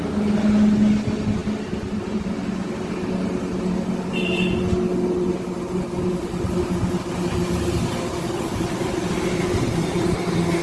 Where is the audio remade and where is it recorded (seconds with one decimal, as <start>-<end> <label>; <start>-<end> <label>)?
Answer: 0.0-7.4 recorded; 7.4-8.2 remade; 8.2-9.5 recorded; 9.5-10.2 remade; 10.2-10.6 recorded

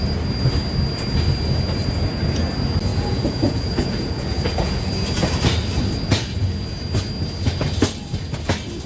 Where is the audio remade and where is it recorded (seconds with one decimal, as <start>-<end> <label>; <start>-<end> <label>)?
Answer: 0.0-2.9 recorded; 2.9-4.9 remade; 4.9-8.9 recorded

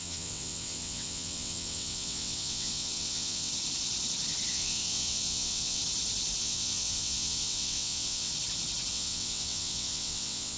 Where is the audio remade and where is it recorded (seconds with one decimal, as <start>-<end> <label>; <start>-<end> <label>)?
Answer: 0.0-3.5 remade; 3.5-4.5 recorded; 4.5-5.8 remade; 5.8-6.4 recorded; 6.4-8.3 remade; 8.3-8.9 recorded; 8.9-10.6 remade

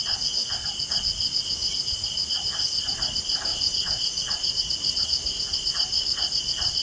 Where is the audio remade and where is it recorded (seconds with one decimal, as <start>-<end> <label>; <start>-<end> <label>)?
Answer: 0.0-6.8 recorded

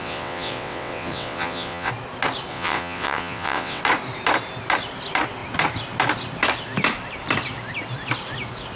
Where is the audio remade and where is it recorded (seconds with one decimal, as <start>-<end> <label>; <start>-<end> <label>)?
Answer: 0.0-1.9 remade; 1.9-2.5 recorded; 2.5-3.8 remade; 3.8-8.8 recorded

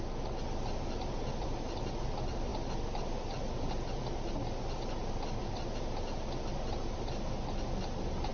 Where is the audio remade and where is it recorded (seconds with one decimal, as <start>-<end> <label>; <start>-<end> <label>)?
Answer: 0.0-8.3 recorded